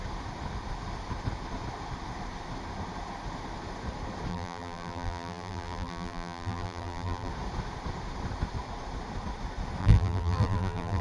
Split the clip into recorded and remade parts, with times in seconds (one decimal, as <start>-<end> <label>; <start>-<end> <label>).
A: 0.0-4.3 recorded; 4.3-7.3 remade; 7.3-9.8 recorded; 9.8-11.0 remade